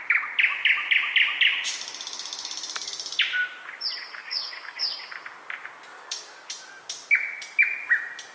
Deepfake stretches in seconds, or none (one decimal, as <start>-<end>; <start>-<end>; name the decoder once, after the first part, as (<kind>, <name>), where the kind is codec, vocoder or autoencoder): 4.2-5.0 (codec, DAC); 5.9-6.5